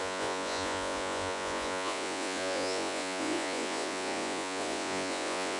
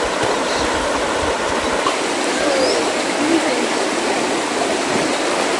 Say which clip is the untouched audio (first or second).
second